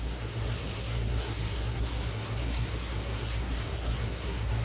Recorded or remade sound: remade